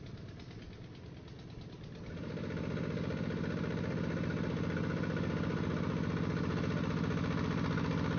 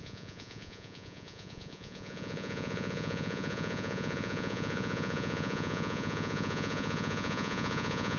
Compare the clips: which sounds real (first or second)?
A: first